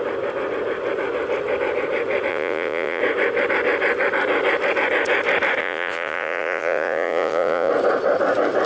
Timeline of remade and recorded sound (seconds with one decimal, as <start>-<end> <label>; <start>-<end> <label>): 0.0-2.3 recorded; 2.3-3.0 remade; 3.0-5.6 recorded; 5.6-7.7 remade; 7.7-8.7 recorded